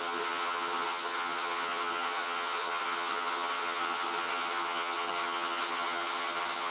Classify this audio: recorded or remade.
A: remade